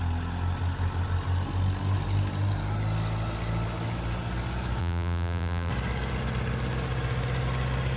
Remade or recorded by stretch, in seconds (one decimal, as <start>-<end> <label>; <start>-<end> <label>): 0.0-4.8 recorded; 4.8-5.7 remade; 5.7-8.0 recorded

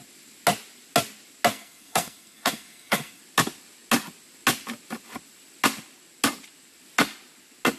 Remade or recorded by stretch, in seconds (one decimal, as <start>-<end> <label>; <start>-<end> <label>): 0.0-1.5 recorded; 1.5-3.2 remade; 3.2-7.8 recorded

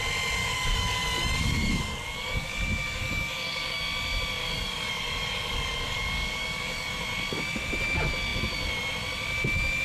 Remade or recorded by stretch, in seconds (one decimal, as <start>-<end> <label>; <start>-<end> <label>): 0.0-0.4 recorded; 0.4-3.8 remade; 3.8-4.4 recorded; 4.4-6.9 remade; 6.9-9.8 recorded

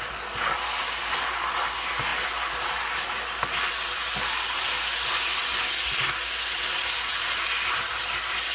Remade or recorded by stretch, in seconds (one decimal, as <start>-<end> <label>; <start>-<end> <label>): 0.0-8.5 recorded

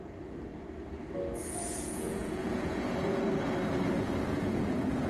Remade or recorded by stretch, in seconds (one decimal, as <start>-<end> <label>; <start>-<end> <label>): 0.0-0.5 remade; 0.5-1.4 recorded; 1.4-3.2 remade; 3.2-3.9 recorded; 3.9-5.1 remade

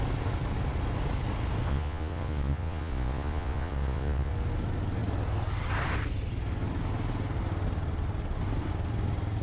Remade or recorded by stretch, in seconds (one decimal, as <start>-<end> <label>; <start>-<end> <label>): 0.0-1.7 recorded; 1.7-4.3 remade; 4.3-9.4 recorded

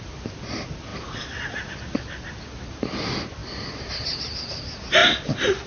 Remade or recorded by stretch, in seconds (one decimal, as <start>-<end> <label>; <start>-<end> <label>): 0.0-5.7 recorded